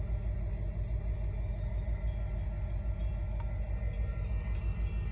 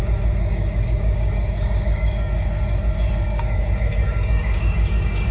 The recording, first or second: first